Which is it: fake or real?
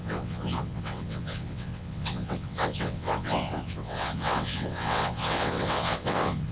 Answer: fake